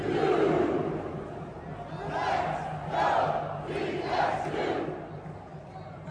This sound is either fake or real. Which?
real